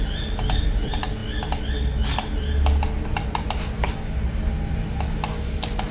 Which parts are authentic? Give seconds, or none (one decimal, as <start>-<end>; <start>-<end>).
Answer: 0.0-5.9